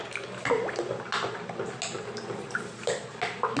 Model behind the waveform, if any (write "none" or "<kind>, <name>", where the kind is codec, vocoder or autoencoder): none